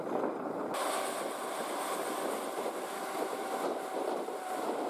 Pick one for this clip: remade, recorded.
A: recorded